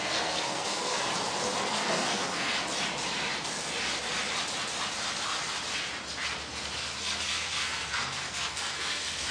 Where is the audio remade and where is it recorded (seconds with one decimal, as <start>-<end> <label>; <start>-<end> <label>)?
0.0-1.1 remade; 1.1-1.7 recorded; 1.7-2.5 remade; 2.5-7.3 recorded; 7.3-9.3 remade